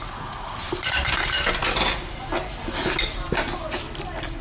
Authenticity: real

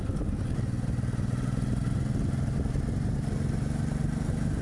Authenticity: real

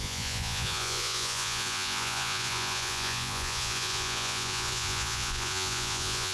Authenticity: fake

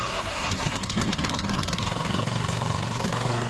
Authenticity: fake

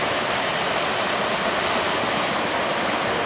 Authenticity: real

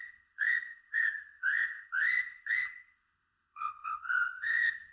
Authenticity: fake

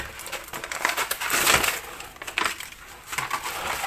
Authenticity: fake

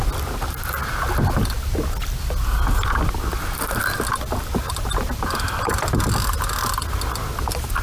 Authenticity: real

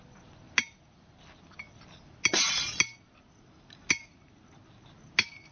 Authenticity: real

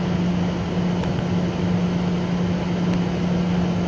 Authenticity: real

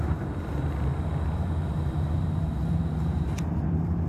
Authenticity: fake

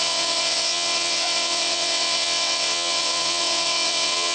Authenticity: fake